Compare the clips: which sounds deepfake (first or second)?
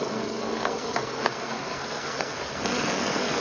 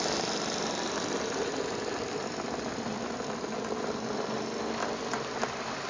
first